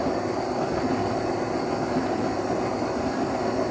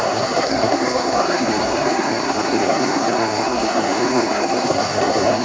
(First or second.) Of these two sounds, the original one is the first